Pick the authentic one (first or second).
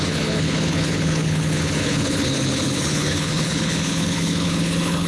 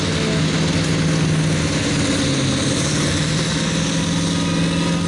second